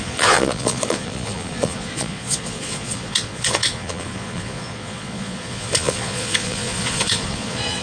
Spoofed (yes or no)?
yes